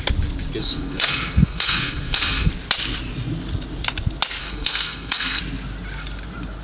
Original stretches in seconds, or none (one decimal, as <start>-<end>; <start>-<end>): 0.0-0.6; 2.5-4.4; 5.4-6.6